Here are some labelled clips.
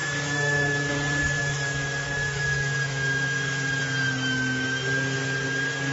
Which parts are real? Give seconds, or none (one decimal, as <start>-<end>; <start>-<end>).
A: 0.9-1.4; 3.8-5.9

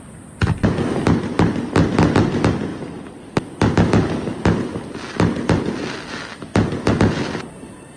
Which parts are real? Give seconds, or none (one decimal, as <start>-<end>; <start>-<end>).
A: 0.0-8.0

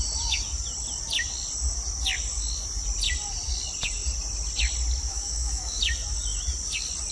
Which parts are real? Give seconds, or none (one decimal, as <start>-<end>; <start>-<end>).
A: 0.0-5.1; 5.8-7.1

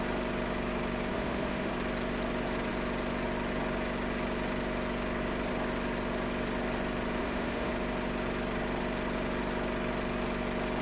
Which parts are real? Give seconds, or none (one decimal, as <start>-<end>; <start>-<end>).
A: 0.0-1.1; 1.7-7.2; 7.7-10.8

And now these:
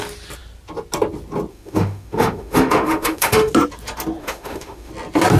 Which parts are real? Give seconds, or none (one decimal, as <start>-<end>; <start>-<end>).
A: 0.0-1.5; 3.5-4.2; 4.9-5.4

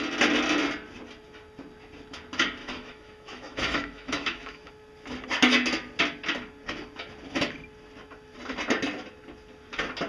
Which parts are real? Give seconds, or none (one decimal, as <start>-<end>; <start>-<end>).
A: 0.0-2.6; 4.7-10.1

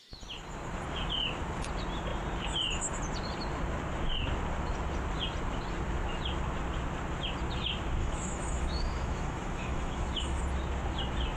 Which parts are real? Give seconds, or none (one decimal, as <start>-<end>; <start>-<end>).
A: 0.0-8.0; 10.4-11.4